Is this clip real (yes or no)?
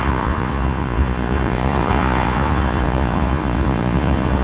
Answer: no